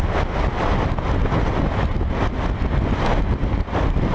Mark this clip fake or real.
real